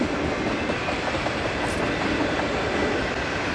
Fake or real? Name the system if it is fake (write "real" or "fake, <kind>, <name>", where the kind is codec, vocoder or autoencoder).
real